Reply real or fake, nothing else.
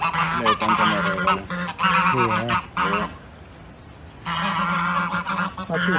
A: real